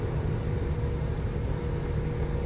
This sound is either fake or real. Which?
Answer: real